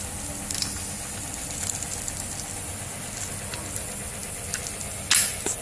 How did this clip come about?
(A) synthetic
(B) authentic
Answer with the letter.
B